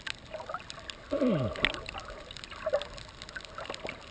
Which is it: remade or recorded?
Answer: recorded